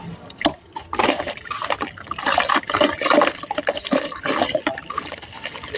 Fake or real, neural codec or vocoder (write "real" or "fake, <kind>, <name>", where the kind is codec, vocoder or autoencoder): real